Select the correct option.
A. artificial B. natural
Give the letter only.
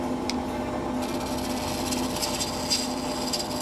B